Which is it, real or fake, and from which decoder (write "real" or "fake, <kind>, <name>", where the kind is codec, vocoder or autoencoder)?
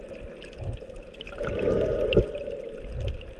real